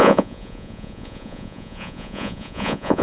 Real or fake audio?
fake